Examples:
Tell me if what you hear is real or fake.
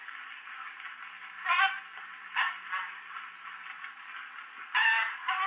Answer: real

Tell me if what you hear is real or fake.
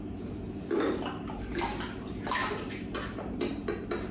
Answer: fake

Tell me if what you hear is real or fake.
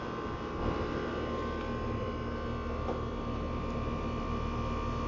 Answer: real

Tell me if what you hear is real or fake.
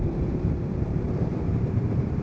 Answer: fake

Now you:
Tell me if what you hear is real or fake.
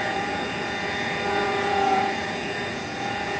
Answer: fake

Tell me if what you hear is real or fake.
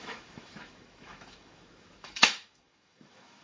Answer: fake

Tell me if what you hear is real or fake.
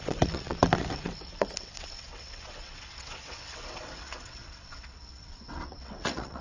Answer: fake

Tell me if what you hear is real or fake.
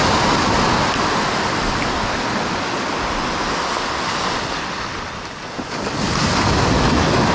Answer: real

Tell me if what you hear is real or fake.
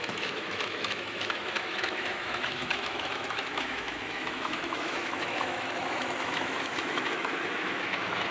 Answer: fake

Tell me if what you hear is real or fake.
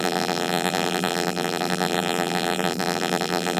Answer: fake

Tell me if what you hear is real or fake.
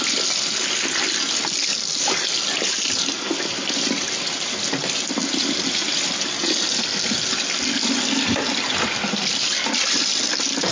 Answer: real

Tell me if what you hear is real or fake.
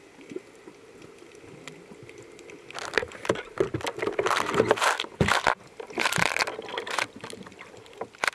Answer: real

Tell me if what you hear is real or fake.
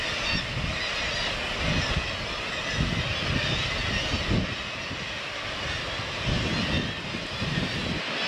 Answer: real